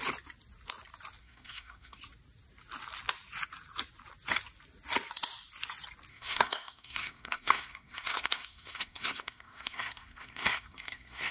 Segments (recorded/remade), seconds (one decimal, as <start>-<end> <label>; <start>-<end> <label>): 0.0-1.2 recorded; 1.2-2.0 remade; 2.0-6.1 recorded; 6.1-11.3 remade